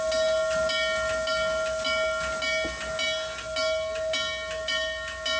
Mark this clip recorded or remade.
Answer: recorded